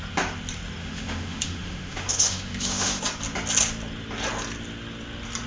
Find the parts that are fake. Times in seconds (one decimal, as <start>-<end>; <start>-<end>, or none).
0.8-3.0